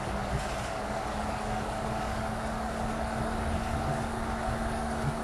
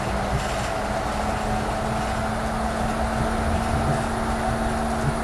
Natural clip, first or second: second